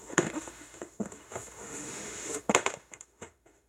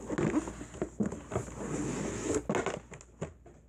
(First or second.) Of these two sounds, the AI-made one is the first